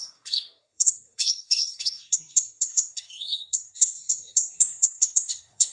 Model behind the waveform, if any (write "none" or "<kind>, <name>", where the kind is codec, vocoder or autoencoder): codec, SNAC